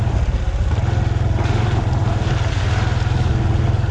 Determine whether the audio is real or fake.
real